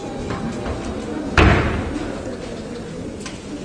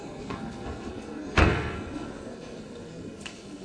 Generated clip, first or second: second